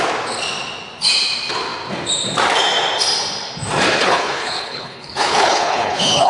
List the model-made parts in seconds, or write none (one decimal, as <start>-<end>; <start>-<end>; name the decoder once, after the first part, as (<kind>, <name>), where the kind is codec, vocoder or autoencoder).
4.0-6.3 (codec, HILCodec)